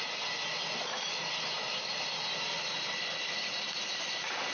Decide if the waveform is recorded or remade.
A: recorded